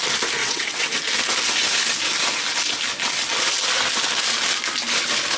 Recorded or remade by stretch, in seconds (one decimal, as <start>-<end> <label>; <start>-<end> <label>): 0.0-0.4 recorded; 0.4-1.0 remade; 1.0-5.4 recorded